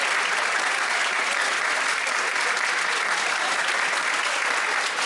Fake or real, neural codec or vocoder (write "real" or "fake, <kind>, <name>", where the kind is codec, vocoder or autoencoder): real